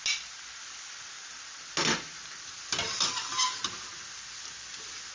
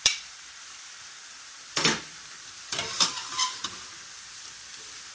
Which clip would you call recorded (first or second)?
first